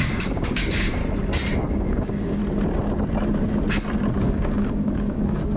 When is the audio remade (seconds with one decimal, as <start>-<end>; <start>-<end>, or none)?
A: 0.0-1.0; 1.7-2.4; 4.2-5.6